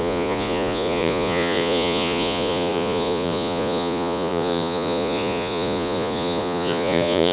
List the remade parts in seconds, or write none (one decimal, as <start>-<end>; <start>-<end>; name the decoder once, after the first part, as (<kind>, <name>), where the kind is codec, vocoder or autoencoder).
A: 0.0-7.3 (vocoder, Vocos)